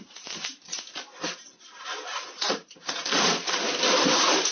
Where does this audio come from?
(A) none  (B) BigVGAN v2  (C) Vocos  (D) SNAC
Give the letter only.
B